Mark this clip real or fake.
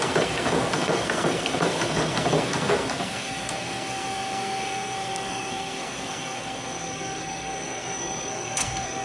fake